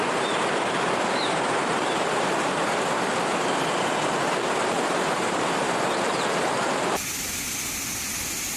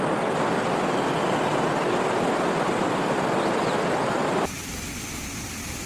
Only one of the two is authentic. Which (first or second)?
second